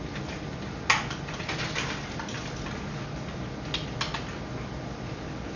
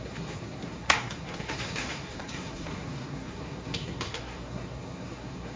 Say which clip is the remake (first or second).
second